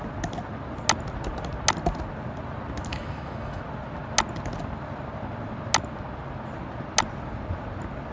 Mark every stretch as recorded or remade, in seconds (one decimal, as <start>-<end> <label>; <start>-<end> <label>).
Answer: 0.0-2.9 recorded; 2.9-3.6 remade; 3.6-8.1 recorded